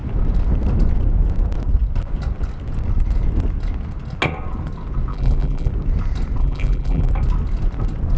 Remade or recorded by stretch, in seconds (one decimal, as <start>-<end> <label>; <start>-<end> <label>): 0.0-5.1 recorded; 5.1-5.7 remade; 5.7-6.4 recorded; 6.4-7.1 remade; 7.1-8.2 recorded